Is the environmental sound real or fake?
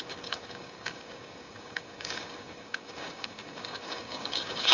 fake